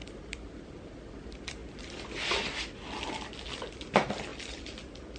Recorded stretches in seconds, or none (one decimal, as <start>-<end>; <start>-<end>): 0.0-5.2